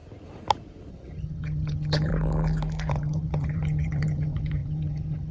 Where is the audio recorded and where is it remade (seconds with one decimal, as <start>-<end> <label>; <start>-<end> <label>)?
0.0-0.9 recorded; 0.9-2.1 remade; 2.1-2.9 recorded; 2.9-5.3 remade